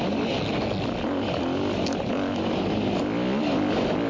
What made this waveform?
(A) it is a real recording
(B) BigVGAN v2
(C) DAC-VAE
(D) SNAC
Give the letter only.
A